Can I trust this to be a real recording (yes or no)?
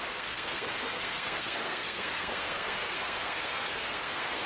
no